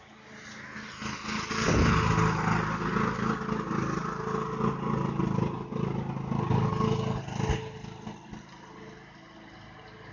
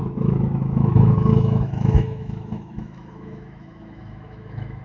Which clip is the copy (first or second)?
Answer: second